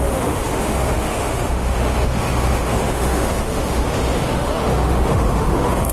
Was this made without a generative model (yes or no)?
no